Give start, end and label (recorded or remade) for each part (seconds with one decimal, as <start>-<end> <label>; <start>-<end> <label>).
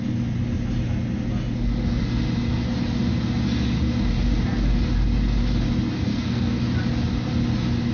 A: 0.0-6.1 recorded; 6.1-6.6 remade; 6.6-7.9 recorded